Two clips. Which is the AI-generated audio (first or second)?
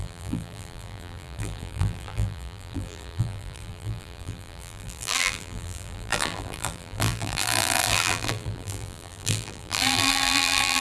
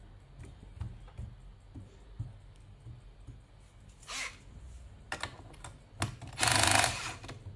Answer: first